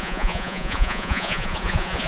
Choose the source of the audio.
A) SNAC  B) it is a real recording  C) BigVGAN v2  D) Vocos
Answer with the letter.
D